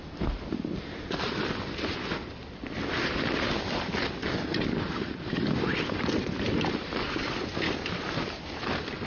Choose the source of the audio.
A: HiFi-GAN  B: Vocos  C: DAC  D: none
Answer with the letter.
D